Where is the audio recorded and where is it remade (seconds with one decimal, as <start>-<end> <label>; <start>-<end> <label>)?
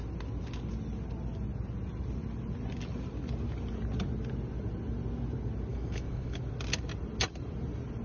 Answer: 0.0-5.7 recorded; 5.7-6.4 remade; 6.4-8.0 recorded